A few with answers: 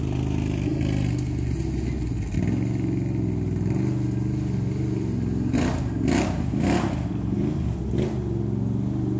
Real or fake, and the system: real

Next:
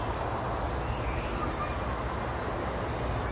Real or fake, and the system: real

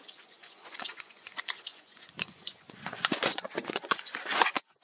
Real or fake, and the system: fake, vocoder, Vocos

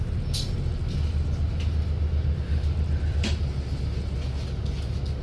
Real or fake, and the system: real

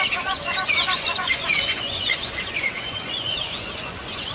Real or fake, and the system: fake, vocoder, Vocos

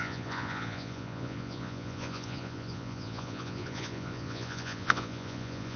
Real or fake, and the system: fake, vocoder, Vocos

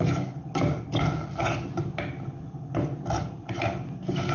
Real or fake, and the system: real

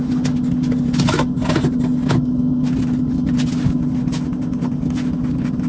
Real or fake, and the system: real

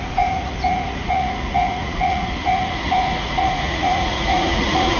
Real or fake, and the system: fake, vocoder, Vocos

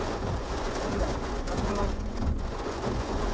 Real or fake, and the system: fake, vocoder, Vocos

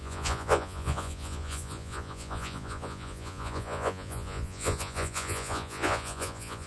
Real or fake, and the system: fake, vocoder, Vocos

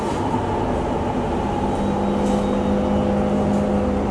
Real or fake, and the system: real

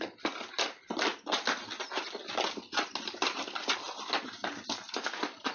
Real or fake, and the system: real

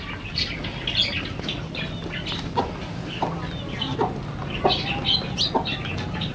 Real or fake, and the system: real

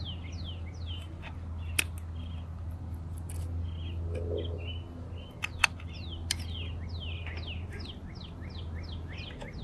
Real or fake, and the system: real